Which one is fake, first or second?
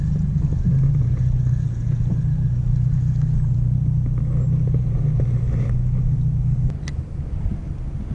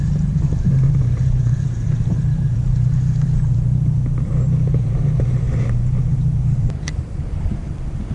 second